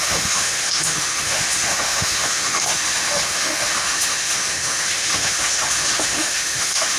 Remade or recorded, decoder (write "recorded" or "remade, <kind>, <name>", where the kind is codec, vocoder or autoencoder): remade, autoencoder, DAC-VAE